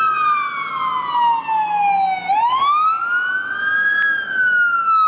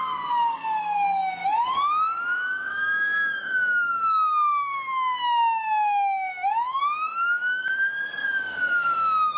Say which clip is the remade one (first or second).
second